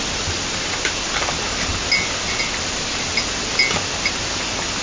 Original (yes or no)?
yes